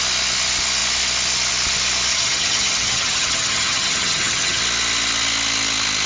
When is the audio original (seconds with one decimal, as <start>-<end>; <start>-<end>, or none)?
0.0-2.1; 4.6-6.1